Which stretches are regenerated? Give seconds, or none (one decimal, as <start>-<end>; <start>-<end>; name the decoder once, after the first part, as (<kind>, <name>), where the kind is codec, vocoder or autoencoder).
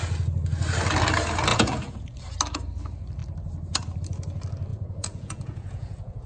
1.5-2.1 (vocoder, Vocos); 4.7-6.3